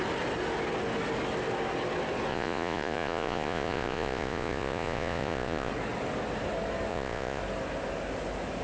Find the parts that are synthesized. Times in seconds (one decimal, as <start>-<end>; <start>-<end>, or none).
2.3-5.7; 6.9-7.4